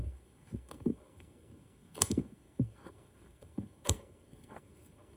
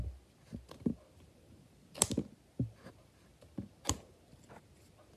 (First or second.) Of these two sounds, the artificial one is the first